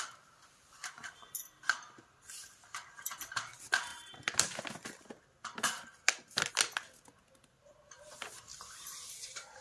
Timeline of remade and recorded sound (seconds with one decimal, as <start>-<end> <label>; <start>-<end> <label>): 0.0-9.6 recorded